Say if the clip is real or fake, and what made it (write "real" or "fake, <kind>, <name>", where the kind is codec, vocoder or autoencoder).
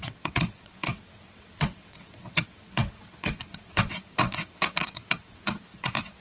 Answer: fake, vocoder, WaveNeXt